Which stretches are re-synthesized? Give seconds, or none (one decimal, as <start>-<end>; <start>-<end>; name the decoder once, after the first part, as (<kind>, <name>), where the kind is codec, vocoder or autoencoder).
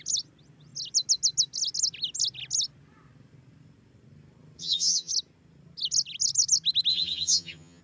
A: 4.6-5.1 (vocoder, HiFi-GAN); 6.9-7.8